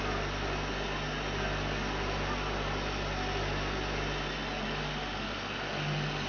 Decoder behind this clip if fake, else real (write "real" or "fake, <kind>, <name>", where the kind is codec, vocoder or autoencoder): real